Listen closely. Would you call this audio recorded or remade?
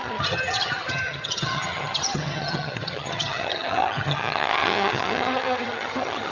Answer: remade